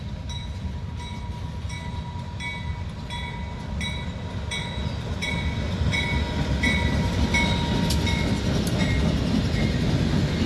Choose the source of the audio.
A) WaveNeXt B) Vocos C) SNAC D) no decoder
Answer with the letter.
D